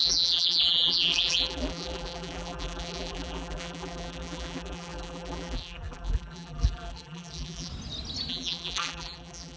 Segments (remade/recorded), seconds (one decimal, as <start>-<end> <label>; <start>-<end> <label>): 0.0-7.7 remade; 7.7-8.3 recorded; 8.3-9.6 remade